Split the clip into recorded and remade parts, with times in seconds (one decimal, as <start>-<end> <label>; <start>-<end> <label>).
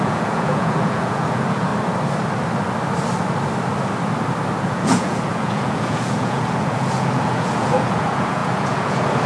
0.0-1.7 remade; 1.7-4.6 recorded; 4.6-9.3 remade